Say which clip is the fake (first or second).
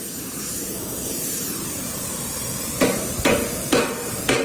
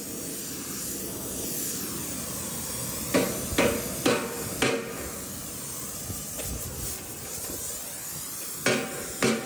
first